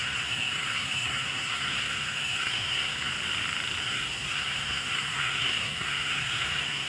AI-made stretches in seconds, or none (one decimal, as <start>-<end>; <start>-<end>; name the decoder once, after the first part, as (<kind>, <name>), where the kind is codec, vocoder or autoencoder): 0.0-3.1 (codec, SNAC); 3.8-6.9